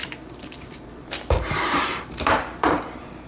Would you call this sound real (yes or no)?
no